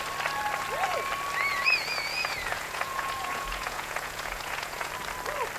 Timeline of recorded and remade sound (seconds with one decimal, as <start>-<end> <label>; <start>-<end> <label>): 0.0-1.5 recorded; 1.5-4.9 remade; 4.9-5.6 recorded